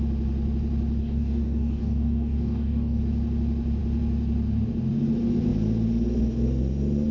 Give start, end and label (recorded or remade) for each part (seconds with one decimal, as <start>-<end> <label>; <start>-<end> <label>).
0.0-1.0 recorded; 1.0-3.0 remade; 3.0-7.1 recorded